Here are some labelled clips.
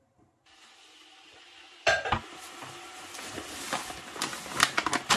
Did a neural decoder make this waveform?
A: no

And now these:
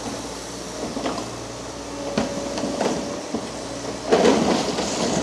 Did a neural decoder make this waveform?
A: no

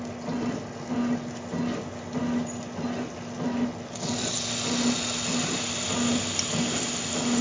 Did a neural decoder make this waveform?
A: no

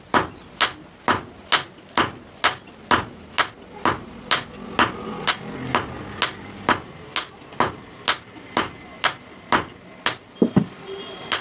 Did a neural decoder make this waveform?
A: no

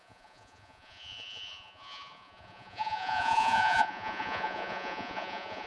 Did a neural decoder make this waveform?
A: yes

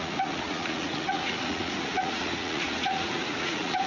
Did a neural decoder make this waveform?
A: yes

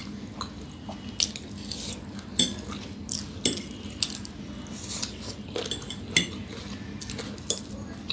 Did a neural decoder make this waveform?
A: no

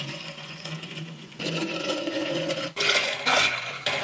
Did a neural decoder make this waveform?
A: yes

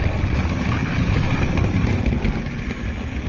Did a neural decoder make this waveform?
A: no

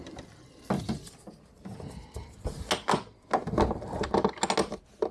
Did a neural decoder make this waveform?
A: no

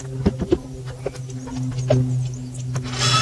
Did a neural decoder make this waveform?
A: no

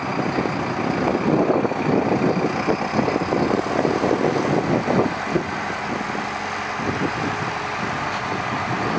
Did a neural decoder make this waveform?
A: no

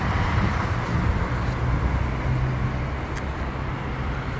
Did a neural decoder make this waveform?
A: no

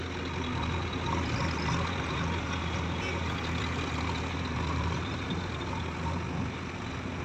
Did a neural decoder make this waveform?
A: no